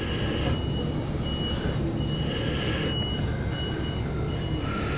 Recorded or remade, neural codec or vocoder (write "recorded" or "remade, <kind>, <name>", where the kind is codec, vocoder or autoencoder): recorded